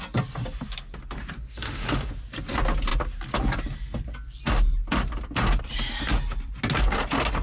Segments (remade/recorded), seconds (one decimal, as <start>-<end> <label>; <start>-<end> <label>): 0.0-1.5 recorded; 1.5-2.1 remade; 2.1-7.4 recorded